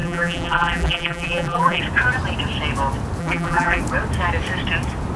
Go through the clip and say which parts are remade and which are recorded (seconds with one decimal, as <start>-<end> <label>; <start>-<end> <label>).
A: 0.0-1.8 remade; 1.8-3.2 recorded; 3.2-3.8 remade; 3.8-5.2 recorded